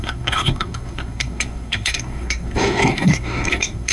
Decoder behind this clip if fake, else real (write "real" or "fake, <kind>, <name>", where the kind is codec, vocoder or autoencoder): fake, codec, SNAC